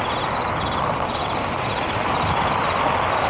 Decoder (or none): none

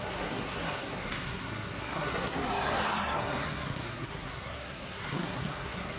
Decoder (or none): codec, SNAC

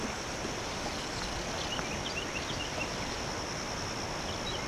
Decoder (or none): none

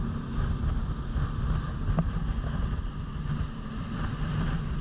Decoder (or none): none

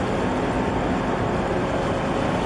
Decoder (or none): none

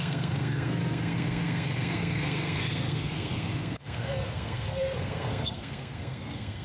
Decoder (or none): codec, SNAC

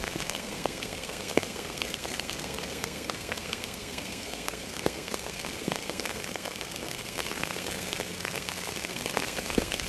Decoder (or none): codec, SNAC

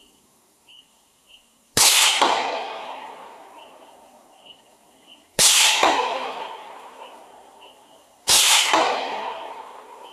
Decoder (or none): codec, SNAC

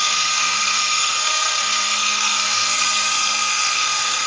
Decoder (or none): codec, SNAC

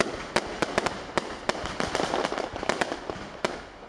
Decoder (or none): none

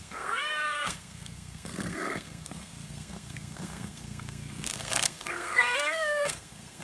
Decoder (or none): codec, SNAC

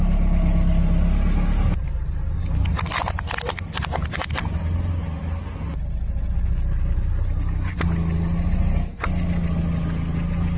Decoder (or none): none